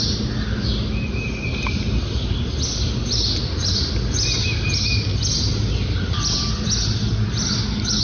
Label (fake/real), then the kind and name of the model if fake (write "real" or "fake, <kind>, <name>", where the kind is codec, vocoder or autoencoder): real